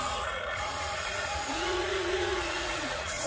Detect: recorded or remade remade